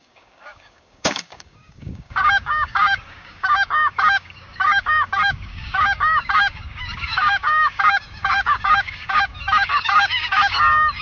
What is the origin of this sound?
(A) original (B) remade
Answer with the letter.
B